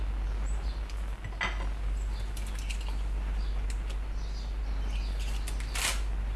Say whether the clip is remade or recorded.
recorded